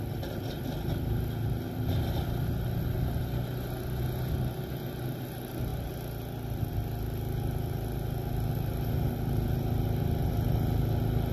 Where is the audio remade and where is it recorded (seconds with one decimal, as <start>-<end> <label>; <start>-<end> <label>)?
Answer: 0.0-11.3 recorded

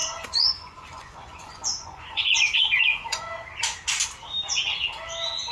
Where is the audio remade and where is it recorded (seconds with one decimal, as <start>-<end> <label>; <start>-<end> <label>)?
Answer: 0.0-3.3 remade; 3.3-5.5 recorded